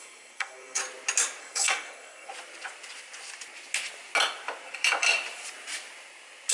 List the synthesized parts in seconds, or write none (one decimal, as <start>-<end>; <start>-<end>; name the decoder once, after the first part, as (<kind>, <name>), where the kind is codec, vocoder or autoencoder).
0.0-0.8 (codec, SNAC); 1.4-2.3